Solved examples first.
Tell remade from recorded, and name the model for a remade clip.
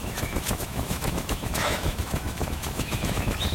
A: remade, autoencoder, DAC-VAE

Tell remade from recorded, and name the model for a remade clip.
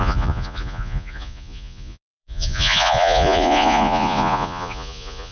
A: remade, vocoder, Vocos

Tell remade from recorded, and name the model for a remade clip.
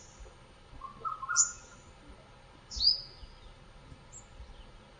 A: recorded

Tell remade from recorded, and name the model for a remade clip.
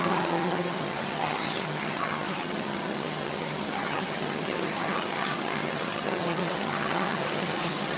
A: remade, vocoder, HiFi-GAN